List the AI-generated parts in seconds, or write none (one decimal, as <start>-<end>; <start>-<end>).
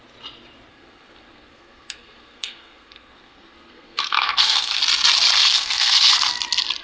0.7-4.8; 5.4-6.1